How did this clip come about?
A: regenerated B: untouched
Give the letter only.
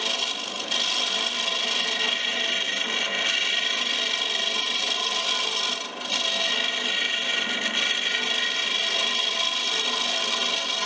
B